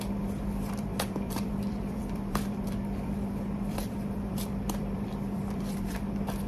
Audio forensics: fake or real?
fake